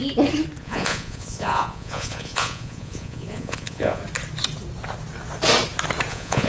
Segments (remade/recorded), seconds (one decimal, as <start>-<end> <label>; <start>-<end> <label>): 0.0-0.6 recorded; 0.6-4.0 remade; 4.0-6.1 recorded; 6.1-6.5 remade